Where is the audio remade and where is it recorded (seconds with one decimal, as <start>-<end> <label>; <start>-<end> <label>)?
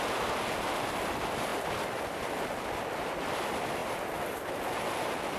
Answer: 0.0-1.5 recorded; 1.5-2.3 remade; 2.3-5.4 recorded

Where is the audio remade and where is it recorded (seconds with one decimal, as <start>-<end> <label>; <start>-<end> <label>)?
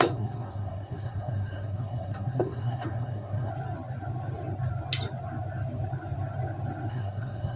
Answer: 0.0-3.5 remade; 3.5-6.9 recorded; 6.9-7.6 remade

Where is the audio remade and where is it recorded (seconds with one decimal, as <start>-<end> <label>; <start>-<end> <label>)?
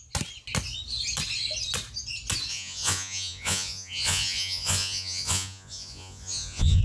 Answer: 0.0-2.5 recorded; 2.5-6.8 remade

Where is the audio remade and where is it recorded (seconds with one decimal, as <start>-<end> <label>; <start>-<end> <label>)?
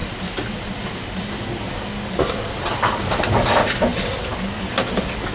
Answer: 0.0-5.3 recorded